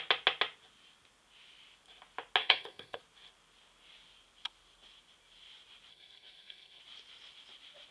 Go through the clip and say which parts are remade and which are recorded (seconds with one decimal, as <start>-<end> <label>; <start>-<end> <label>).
0.0-2.4 recorded; 2.4-3.0 remade; 3.0-5.9 recorded; 5.9-6.8 remade; 6.8-7.9 recorded